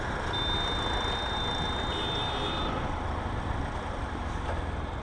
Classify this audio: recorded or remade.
recorded